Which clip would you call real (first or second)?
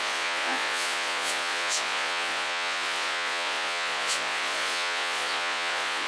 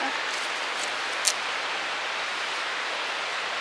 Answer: second